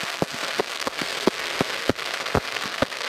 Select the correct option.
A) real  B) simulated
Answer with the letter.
B